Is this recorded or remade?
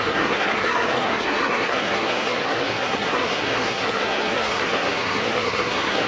remade